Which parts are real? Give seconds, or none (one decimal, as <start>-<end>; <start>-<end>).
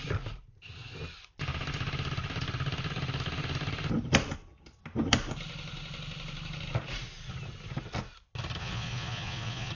0.0-8.6